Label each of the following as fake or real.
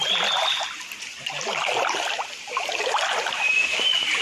real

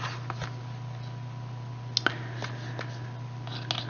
real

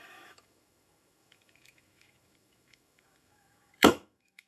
fake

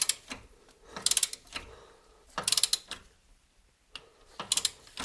real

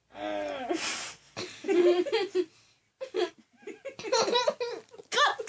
real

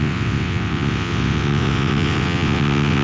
fake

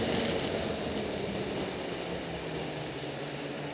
real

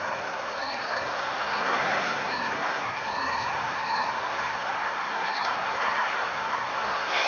fake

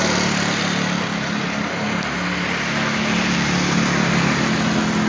real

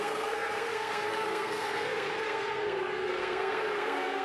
fake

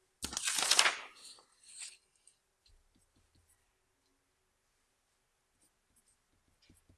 real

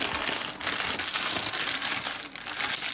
real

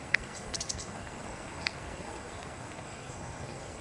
fake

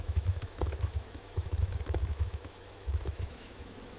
fake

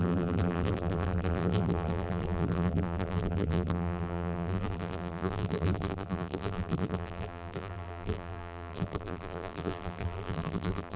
fake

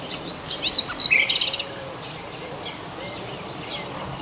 real